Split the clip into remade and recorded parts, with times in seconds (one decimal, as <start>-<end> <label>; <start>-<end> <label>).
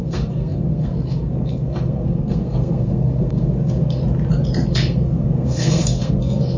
0.0-4.0 remade; 4.0-4.7 recorded; 4.7-6.6 remade